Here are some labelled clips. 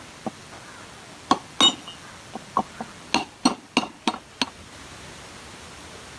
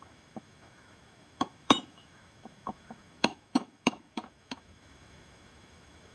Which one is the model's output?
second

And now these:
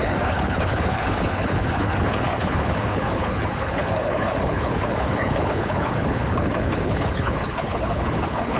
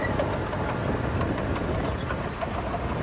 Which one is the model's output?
first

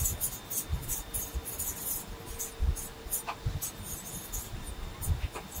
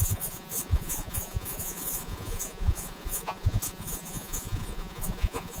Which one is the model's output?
second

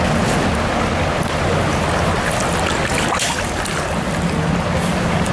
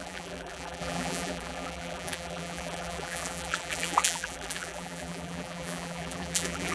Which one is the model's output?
second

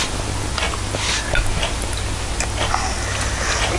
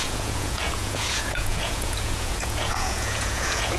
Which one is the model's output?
second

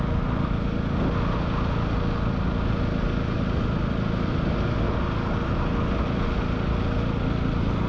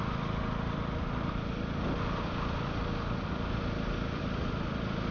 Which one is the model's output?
second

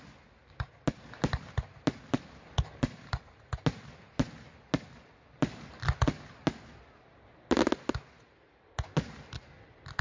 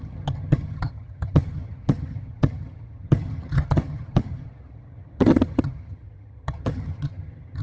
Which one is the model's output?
second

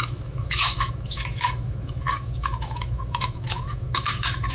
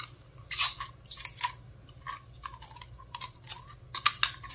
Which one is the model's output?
first